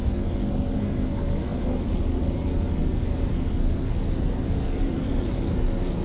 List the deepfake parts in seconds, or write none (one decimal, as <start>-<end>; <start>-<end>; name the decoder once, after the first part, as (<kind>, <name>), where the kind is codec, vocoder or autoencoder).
0.0-6.0 (codec, SNAC)